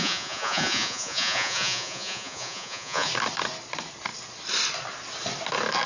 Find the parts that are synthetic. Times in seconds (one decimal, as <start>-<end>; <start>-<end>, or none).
0.0-3.1